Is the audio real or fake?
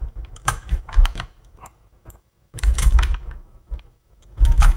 fake